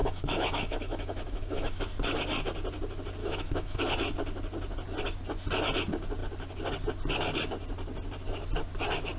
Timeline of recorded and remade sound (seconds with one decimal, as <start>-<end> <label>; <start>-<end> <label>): 0.0-1.8 remade; 1.8-3.2 recorded; 3.2-3.8 remade; 3.8-9.2 recorded